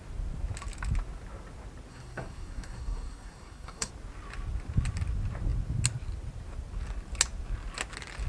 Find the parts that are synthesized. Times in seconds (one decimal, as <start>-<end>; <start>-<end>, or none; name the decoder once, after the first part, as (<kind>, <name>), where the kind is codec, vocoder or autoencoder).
1.9-3.9 (codec, SNAC)